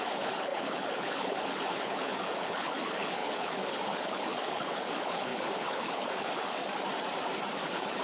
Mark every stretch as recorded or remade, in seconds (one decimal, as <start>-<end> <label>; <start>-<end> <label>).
0.0-6.6 remade; 6.6-7.6 recorded; 7.6-8.0 remade